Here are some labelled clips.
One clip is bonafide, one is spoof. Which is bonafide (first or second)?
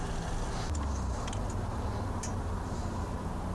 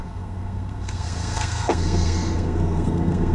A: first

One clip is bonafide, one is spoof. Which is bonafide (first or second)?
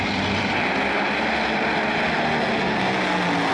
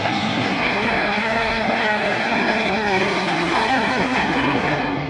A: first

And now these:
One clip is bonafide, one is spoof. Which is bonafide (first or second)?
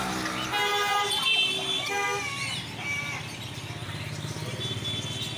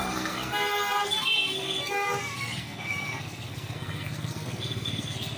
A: first